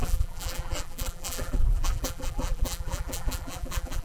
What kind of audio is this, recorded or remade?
remade